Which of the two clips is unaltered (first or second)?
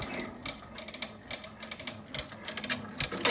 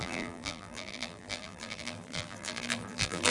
first